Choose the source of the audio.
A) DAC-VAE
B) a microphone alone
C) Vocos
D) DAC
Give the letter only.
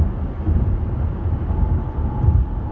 B